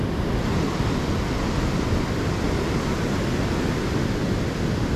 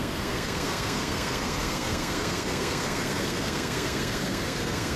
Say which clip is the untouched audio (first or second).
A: first